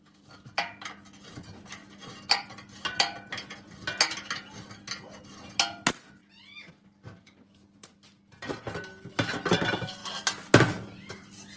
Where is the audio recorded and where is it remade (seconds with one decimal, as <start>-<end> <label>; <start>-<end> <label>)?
0.0-11.6 recorded